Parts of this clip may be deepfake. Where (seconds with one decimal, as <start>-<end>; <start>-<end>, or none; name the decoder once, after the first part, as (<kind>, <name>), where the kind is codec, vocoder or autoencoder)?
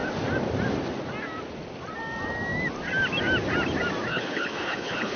4.1-5.2 (codec, HILCodec)